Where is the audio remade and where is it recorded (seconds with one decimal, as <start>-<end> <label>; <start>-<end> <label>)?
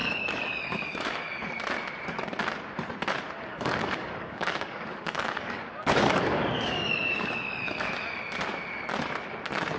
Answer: 0.0-1.5 remade; 1.5-3.5 recorded; 3.5-7.9 remade; 7.9-9.8 recorded